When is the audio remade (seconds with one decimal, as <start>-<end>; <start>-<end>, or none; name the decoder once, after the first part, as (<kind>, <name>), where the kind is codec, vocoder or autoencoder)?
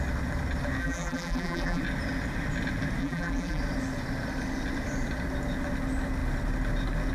0.8-1.8 (vocoder, BigVGAN v2); 3.0-3.6